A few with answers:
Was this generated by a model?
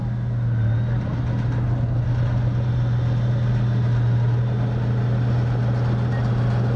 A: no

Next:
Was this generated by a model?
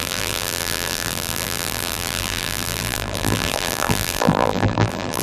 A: yes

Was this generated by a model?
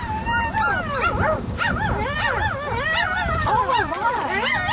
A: no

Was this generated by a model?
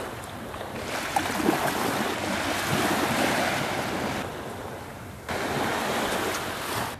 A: no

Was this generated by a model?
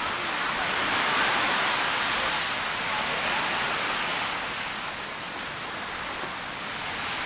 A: no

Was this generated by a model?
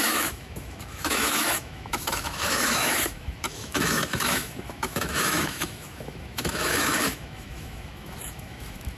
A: yes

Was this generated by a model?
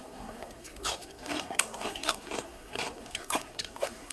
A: yes